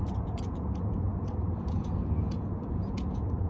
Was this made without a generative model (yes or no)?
no